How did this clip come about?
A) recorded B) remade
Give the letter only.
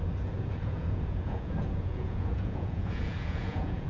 B